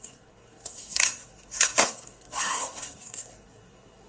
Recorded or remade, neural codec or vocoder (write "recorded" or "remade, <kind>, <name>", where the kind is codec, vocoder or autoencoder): remade, codec, SNAC